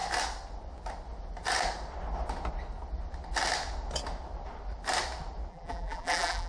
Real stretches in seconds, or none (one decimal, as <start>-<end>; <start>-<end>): 0.0-5.5